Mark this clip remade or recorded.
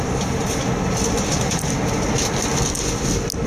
recorded